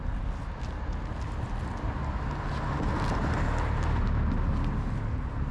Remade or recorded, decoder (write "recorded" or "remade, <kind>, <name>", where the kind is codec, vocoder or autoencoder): recorded